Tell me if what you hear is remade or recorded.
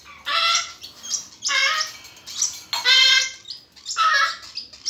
recorded